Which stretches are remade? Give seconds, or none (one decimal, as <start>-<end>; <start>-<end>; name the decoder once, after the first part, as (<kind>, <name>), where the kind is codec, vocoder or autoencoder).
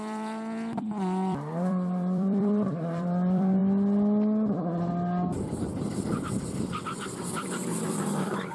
0.0-3.6 (vocoder, BigVGAN v2); 5.3-8.5